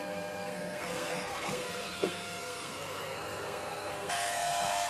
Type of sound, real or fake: fake